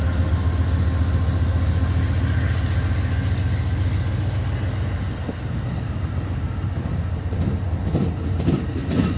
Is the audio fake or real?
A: real